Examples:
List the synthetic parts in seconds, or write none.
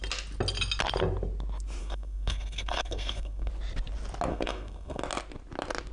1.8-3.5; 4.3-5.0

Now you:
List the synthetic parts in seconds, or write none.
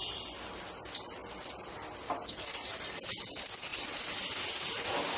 3.7-4.6